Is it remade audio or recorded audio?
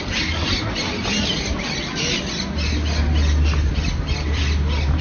recorded